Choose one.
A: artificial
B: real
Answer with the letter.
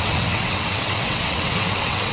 A